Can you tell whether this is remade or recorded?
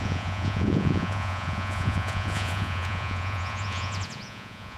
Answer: remade